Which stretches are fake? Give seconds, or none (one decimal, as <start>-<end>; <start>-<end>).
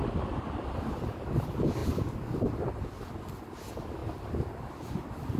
none